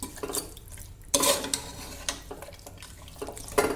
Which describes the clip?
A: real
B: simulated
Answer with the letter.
A